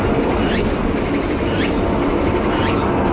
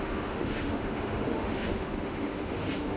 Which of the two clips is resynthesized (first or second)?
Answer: second